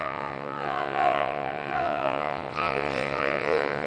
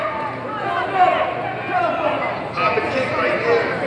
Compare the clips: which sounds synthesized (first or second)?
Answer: first